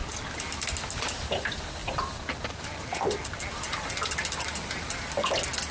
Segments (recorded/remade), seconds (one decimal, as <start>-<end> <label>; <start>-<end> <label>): 0.0-5.7 recorded